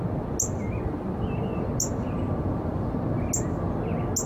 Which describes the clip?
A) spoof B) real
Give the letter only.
B